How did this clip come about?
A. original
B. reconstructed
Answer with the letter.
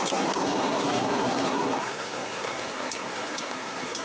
B